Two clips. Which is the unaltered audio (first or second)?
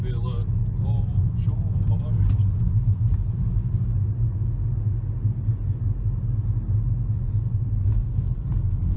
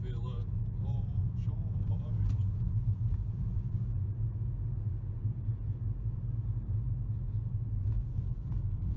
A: first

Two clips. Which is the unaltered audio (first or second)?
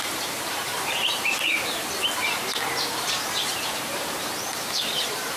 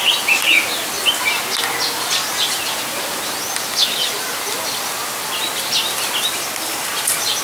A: second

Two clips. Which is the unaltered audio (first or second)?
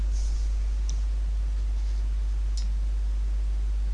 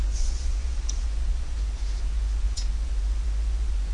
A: first